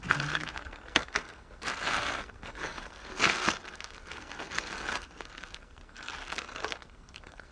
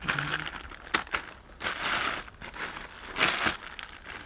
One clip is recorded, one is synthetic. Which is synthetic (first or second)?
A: first